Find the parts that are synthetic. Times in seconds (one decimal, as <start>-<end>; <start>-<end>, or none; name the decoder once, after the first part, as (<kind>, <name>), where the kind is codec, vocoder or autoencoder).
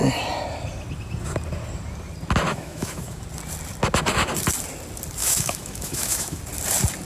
2.5-3.2 (autoencoder, DAC-VAE); 5.2-6.4